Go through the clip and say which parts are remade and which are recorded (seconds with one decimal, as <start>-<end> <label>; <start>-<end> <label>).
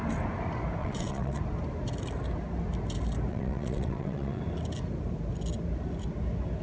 0.0-0.8 recorded; 0.8-1.4 remade; 1.4-3.3 recorded; 3.3-4.4 remade; 4.4-6.6 recorded